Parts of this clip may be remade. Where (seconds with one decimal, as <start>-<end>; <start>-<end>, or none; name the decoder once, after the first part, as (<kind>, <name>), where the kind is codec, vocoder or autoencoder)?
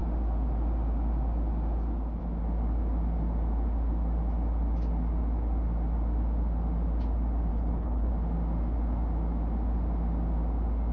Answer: 7.5-8.1 (codec, HILCodec)